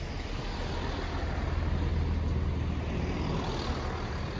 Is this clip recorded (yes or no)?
yes